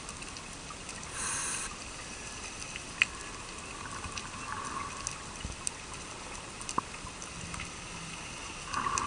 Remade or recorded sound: recorded